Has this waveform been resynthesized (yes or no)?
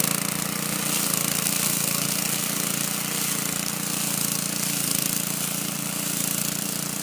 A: no